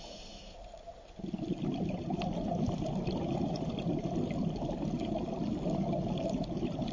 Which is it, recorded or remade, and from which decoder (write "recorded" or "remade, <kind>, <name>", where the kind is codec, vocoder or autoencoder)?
recorded